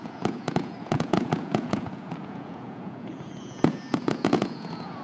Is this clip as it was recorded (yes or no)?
no